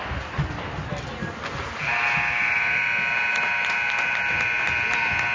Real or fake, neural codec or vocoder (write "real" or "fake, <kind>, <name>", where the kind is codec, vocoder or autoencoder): real